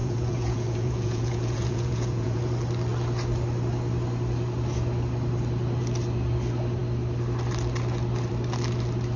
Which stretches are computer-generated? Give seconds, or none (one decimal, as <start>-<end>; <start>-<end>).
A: 0.0-2.4